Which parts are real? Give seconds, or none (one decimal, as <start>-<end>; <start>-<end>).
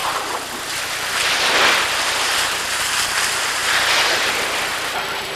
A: 3.6-4.3